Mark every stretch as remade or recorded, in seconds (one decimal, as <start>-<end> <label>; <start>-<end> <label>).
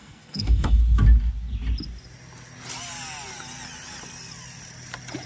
0.0-0.8 remade; 0.8-5.3 recorded